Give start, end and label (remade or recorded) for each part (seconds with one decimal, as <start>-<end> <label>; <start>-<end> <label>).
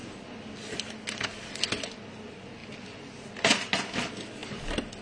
0.0-5.0 recorded